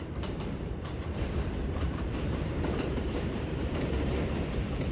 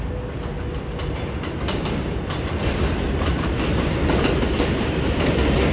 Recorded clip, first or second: second